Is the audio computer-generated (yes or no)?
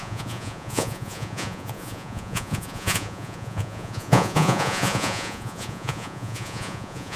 yes